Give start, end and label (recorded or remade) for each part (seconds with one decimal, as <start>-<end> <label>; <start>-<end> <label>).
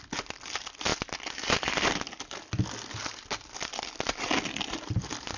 0.0-5.4 recorded